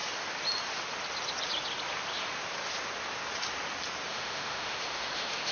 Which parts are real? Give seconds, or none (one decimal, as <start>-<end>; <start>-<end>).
0.0-4.1